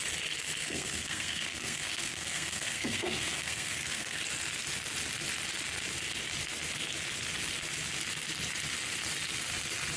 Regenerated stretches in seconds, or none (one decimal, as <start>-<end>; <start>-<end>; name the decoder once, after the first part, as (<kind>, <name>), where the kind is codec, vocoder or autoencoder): 0.6-4.2 (codec, SNAC)